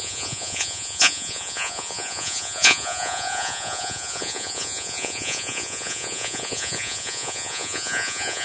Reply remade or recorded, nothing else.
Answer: remade